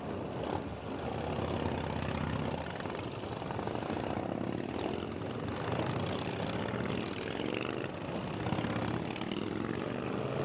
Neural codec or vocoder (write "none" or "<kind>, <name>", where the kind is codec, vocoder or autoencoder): none